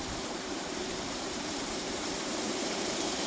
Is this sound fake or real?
fake